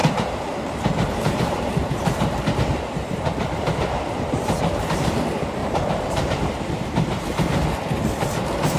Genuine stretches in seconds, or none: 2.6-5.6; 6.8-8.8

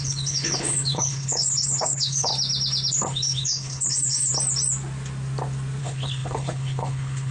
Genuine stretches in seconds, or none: 2.3-2.9; 4.3-5.8

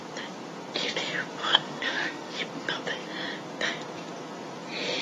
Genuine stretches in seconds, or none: 0.0-1.4; 2.3-5.0

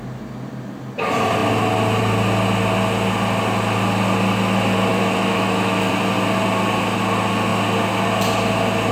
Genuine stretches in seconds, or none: 0.0-4.9; 5.9-8.9